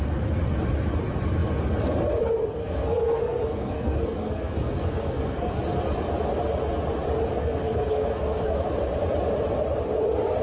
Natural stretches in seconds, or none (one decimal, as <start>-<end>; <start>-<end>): 0.0-2.6; 5.5-7.4; 8.6-10.4